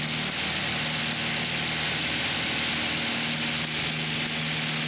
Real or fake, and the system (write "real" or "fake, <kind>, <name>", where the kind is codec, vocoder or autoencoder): real